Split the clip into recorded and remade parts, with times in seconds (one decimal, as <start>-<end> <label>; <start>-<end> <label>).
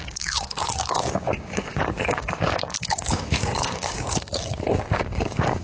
0.0-5.6 remade